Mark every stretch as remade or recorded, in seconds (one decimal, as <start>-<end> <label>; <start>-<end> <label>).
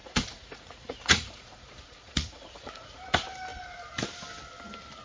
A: 0.0-3.0 remade; 3.0-5.0 recorded